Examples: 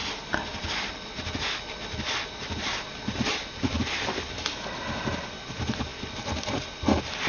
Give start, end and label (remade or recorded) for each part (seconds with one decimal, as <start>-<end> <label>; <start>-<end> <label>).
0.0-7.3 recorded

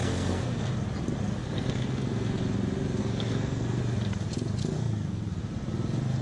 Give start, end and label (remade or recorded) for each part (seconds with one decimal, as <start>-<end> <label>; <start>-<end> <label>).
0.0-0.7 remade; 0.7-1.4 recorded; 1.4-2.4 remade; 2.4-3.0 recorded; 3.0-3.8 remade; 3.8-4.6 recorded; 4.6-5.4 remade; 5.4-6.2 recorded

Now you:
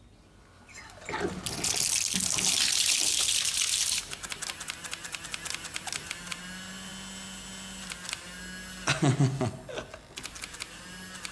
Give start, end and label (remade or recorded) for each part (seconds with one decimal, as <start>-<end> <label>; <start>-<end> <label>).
0.0-11.3 recorded